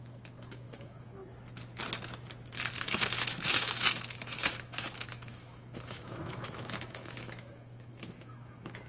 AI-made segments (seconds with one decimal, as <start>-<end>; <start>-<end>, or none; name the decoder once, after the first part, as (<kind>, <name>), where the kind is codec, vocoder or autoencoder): 0.0-1.2 (autoencoder, DAC-VAE); 2.7-8.9